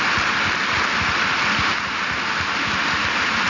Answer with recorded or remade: recorded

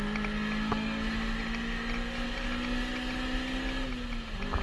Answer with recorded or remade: recorded